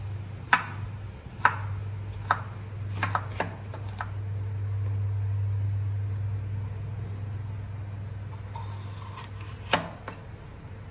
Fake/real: real